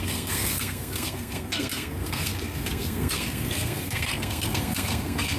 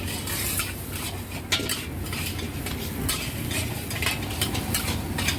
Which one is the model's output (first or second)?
first